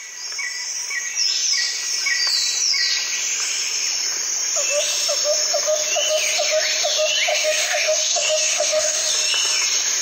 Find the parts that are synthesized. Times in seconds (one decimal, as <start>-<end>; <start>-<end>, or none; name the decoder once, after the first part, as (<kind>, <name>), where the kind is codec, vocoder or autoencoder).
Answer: 7.3-9.1 (codec, DAC)